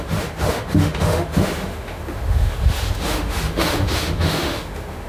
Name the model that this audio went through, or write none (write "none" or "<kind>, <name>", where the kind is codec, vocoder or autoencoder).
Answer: autoencoder, DAC-VAE